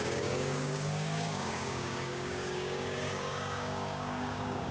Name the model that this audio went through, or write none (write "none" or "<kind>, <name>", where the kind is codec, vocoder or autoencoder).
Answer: codec, DAC